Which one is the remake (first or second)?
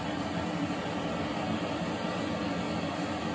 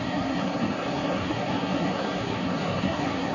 second